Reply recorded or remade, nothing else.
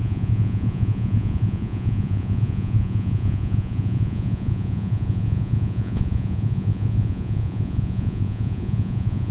remade